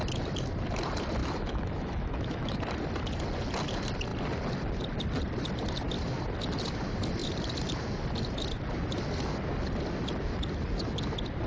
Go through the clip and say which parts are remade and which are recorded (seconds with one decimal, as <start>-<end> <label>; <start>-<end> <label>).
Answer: 0.0-1.2 recorded; 1.2-2.6 remade; 2.6-11.5 recorded